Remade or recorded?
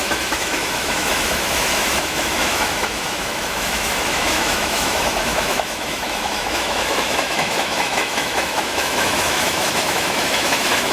remade